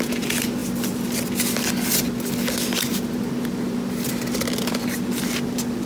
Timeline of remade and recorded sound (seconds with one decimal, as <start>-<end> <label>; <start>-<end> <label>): 0.0-5.9 recorded